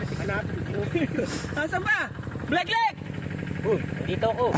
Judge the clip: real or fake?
fake